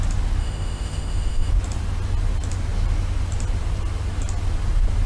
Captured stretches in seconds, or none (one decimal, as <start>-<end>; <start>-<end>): 0.0-0.4; 1.5-5.1